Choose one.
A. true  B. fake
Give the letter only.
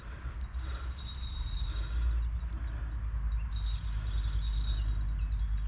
A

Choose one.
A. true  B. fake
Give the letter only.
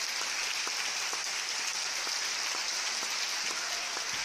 A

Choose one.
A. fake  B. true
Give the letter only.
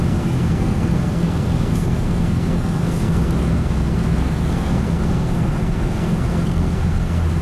A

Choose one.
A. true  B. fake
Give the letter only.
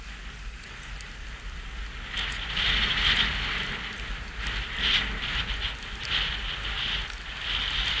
A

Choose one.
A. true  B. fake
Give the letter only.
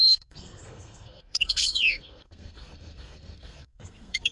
B